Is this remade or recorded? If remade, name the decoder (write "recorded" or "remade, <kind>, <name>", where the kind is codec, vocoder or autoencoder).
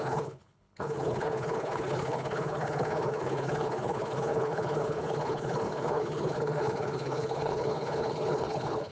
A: remade, codec, HILCodec